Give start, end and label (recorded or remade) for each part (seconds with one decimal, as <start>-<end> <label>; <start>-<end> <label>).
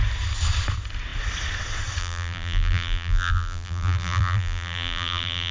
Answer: 0.0-2.0 recorded; 2.0-5.5 remade